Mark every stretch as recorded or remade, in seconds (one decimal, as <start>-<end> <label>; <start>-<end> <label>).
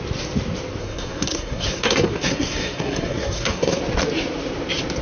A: 0.0-0.8 recorded; 0.8-3.8 remade; 3.8-5.0 recorded